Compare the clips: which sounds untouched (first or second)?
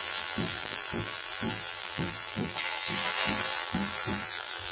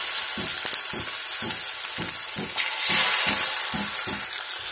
second